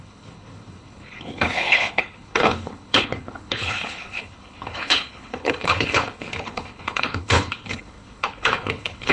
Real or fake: fake